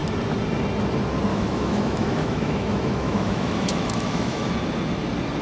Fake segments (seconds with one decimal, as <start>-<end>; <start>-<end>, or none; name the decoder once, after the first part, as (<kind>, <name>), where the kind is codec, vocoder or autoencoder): 1.3-4.5 (autoencoder, DAC-VAE)

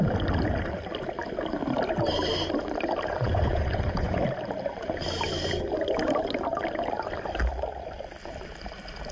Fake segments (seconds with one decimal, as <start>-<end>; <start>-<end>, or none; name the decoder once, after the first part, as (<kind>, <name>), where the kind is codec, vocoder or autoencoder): 3.1-4.2 (vocoder, Vocos)